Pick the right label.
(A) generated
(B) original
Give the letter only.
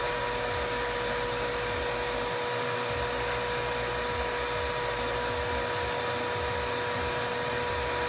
B